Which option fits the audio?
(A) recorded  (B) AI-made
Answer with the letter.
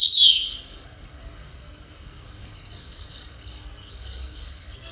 B